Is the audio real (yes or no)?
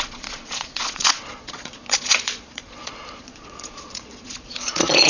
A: no